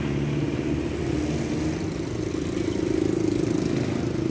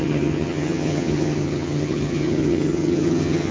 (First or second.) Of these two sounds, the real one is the first